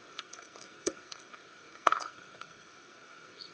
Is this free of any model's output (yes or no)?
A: no